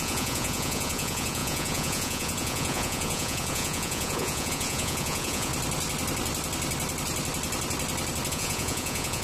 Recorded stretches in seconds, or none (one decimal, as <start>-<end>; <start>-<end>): 5.5-8.3